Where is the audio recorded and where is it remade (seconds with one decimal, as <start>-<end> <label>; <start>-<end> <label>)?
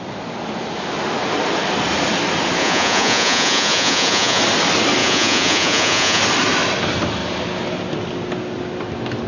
0.0-2.6 recorded; 2.6-4.4 remade; 4.4-5.0 recorded; 5.0-6.2 remade; 6.2-9.3 recorded